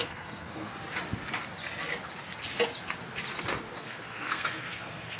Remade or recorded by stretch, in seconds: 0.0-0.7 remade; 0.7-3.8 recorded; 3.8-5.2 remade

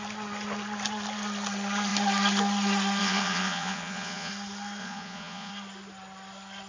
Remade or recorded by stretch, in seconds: 0.0-3.0 recorded; 3.0-4.3 remade; 4.3-4.8 recorded; 4.8-5.5 remade; 5.5-6.7 recorded

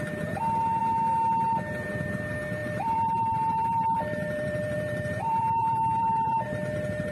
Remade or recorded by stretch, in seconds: 0.0-2.6 recorded; 2.6-7.1 remade

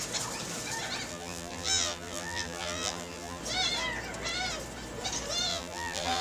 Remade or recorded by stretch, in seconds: 0.0-1.1 recorded; 1.1-3.4 remade; 3.4-5.5 recorded; 5.5-6.2 remade

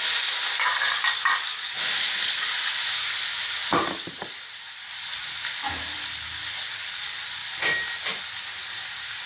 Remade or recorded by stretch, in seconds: 0.0-9.3 recorded

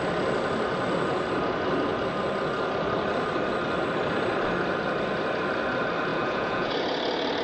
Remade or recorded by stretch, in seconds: 0.0-6.1 recorded; 6.1-6.7 remade; 6.7-7.4 recorded